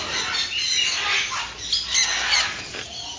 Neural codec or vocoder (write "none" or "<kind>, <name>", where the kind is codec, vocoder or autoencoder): none